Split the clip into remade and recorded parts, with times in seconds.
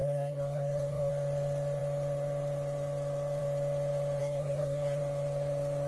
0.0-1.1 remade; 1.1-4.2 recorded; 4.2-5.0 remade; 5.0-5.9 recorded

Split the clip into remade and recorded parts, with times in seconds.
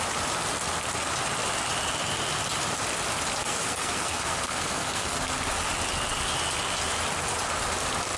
0.0-3.4 recorded; 3.4-5.2 remade; 5.2-8.2 recorded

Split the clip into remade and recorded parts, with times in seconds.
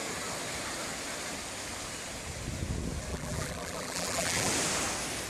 0.0-3.1 recorded; 3.1-4.5 remade; 4.5-5.3 recorded